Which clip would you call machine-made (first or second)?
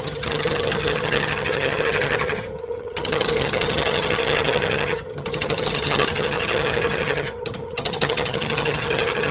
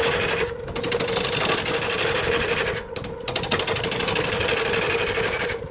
first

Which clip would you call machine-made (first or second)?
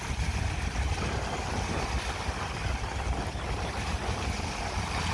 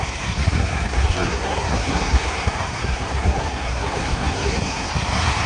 second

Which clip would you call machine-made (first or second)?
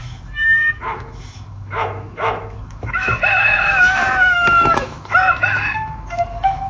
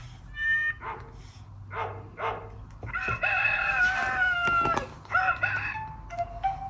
first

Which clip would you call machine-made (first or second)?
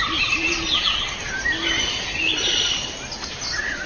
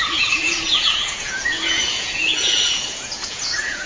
second